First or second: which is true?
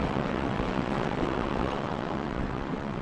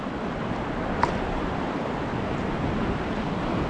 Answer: second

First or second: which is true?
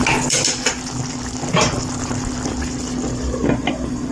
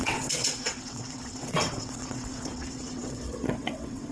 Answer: first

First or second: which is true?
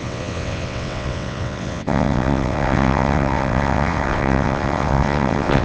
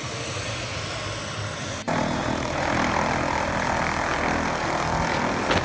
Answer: second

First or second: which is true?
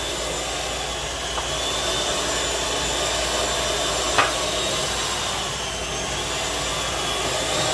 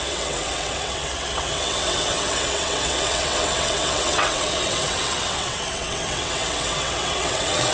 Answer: first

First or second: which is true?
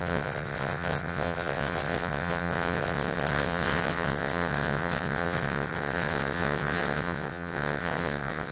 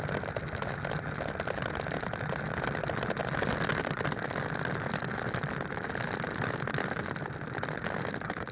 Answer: second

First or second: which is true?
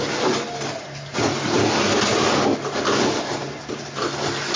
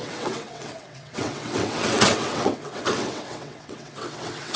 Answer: first